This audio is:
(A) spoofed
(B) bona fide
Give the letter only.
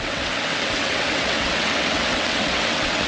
A